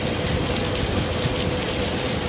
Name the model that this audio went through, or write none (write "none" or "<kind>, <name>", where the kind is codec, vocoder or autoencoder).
none